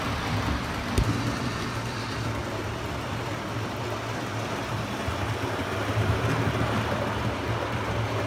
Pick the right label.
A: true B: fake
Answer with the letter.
A